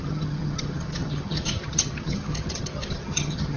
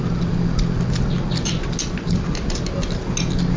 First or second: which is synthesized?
first